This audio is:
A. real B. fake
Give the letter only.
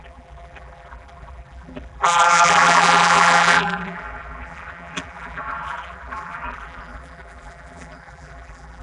B